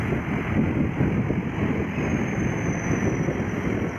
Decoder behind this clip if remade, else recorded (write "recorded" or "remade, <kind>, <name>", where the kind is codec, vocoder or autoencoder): recorded